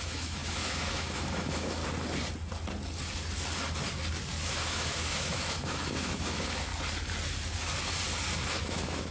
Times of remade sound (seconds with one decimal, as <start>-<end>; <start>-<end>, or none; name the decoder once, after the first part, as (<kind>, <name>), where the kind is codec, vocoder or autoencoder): 0.0-1.8 (autoencoder, DAC-VAE); 4.4-6.7; 8.6-9.1